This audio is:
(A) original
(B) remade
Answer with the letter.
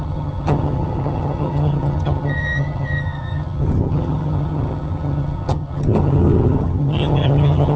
B